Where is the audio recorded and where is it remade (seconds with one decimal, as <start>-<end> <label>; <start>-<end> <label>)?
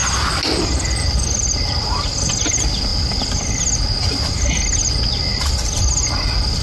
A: 0.0-6.6 recorded